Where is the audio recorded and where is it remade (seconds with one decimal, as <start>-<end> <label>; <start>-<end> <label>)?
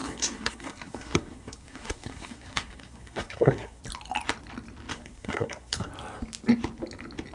0.0-3.8 remade; 3.8-4.9 recorded; 4.9-5.9 remade; 5.9-7.3 recorded